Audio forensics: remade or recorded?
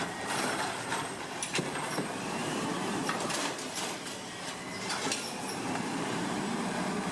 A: remade